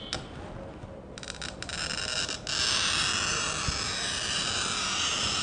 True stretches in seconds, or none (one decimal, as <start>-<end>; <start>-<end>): 0.0-5.4